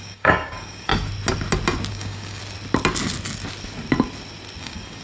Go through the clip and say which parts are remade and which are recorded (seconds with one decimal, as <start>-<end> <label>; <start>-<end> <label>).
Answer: 0.0-0.9 remade; 0.9-1.9 recorded; 1.9-2.4 remade; 2.4-4.6 recorded; 4.6-5.0 remade